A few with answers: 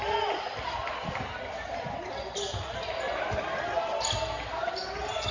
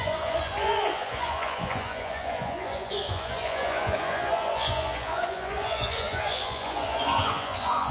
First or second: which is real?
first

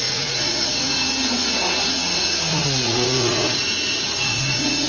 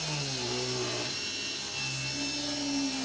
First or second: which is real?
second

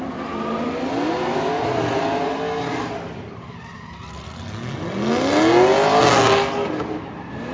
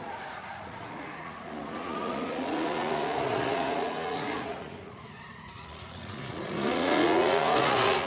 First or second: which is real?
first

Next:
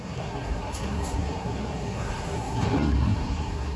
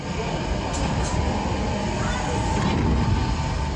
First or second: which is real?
second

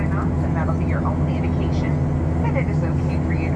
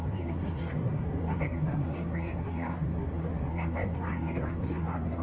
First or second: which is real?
first